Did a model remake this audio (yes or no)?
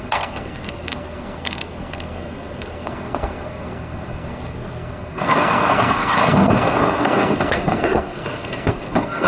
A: yes